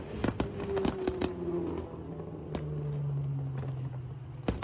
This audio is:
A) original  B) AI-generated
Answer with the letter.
A